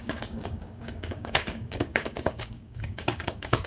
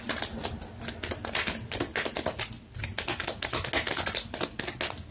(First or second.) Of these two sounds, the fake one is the first